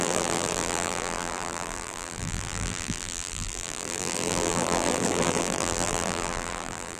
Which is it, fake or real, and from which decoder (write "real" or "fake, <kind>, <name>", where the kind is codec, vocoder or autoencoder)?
fake, vocoder, BigVGAN v2